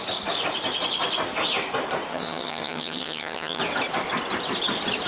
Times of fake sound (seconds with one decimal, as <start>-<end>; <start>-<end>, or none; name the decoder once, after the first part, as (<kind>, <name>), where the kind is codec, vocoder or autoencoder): 2.1-3.6 (vocoder, HiFi-GAN)